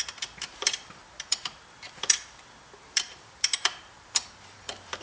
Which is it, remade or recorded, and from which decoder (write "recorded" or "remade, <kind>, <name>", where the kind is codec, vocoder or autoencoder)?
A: remade, vocoder, BigVGAN v2